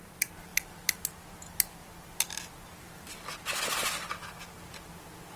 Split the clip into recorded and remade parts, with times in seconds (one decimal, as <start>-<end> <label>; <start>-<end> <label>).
0.0-5.4 recorded